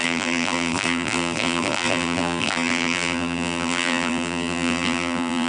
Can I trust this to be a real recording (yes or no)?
no